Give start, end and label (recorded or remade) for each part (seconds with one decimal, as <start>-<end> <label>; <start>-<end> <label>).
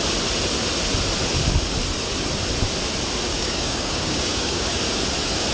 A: 0.0-3.3 recorded; 3.3-4.8 remade; 4.8-5.5 recorded